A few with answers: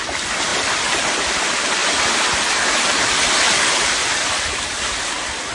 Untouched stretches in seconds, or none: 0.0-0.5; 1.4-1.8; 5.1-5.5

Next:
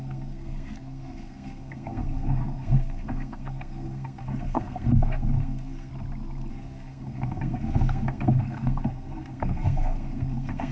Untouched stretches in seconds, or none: 5.9-6.5

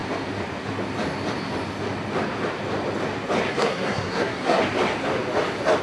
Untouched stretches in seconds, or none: 0.0-3.5; 4.6-5.8

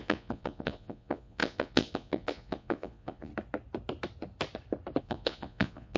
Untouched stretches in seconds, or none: 3.3-5.0

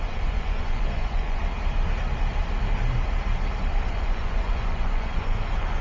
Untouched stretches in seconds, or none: 1.4-3.9

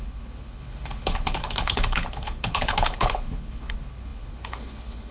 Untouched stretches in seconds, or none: none